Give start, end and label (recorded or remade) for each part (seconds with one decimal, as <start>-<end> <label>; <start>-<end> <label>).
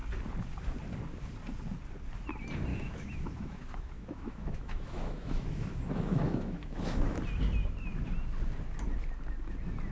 0.0-2.7 recorded; 2.7-7.2 remade; 7.2-9.9 recorded